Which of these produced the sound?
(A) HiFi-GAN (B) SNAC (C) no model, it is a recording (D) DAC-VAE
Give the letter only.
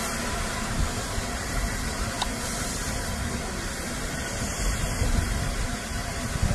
C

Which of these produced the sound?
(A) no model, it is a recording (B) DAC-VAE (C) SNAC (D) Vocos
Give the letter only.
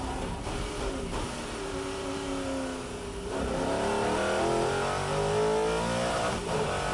A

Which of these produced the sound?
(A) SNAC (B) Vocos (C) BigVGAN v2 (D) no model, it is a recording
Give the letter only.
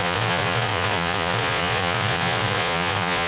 B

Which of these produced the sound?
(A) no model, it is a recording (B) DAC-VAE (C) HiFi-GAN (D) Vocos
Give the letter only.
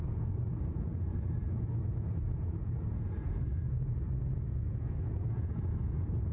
D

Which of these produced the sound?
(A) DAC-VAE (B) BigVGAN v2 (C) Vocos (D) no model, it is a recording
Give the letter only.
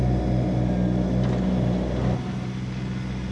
D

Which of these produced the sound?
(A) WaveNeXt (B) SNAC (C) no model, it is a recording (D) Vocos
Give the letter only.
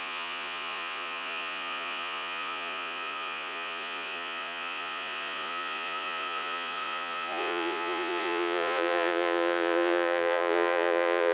D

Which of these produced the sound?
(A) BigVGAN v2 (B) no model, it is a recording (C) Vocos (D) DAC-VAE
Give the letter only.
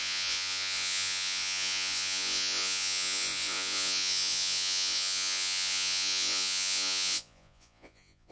C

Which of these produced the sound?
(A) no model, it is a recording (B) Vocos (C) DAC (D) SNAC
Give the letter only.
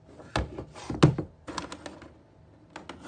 A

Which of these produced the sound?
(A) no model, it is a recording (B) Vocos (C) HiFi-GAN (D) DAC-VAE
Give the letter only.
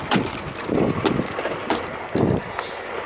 A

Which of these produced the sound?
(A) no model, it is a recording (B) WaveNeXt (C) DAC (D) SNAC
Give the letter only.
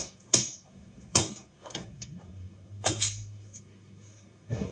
D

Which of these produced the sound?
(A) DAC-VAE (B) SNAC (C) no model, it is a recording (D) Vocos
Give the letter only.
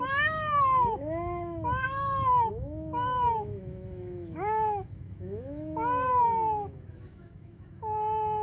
A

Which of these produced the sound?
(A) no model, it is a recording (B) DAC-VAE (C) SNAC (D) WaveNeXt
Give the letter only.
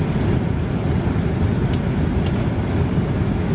A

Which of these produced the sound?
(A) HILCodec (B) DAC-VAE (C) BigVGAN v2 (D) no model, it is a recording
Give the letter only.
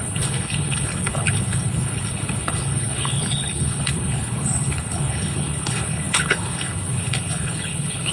A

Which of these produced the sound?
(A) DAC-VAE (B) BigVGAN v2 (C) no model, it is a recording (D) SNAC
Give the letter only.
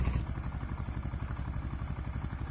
C